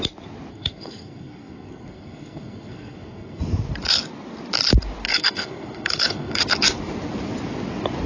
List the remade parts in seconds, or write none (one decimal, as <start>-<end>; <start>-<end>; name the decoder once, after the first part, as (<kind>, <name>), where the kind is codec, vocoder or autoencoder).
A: 0.5-3.4 (codec, SNAC); 5.1-6.4